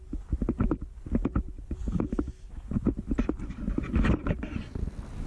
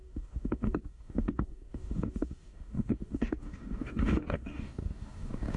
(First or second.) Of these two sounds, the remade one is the second